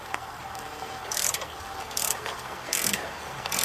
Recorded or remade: remade